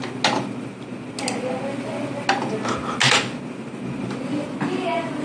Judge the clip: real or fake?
real